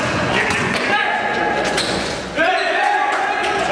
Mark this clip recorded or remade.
remade